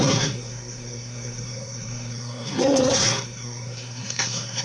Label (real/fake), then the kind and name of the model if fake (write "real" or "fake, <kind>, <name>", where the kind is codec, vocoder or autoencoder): fake, codec, SNAC